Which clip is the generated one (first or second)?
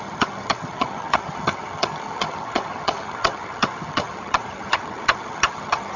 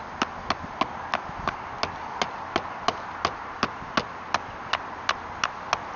first